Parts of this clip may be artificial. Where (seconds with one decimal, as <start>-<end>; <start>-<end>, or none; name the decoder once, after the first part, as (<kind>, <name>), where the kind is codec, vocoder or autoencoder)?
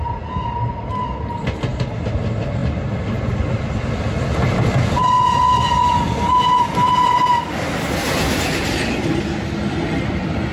none